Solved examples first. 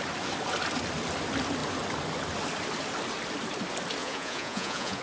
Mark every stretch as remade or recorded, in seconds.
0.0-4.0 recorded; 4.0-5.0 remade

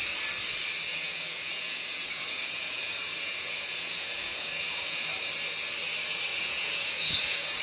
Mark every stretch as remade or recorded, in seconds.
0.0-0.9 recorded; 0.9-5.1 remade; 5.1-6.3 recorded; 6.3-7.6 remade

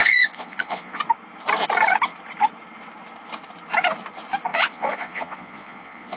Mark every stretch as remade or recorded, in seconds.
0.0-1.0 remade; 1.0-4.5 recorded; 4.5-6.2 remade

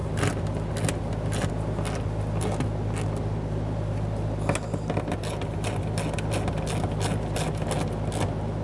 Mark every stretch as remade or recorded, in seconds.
0.0-8.6 recorded